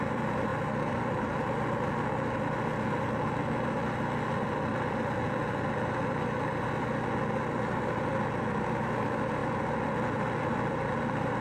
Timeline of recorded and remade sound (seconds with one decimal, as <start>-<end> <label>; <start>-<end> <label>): 0.0-11.4 recorded